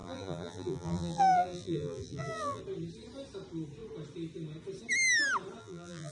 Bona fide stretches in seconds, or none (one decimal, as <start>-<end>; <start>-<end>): 2.6-5.6